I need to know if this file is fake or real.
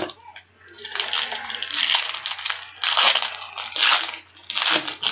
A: real